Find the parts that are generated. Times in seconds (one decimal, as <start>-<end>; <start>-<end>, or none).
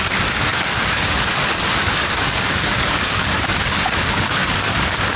0.0-5.2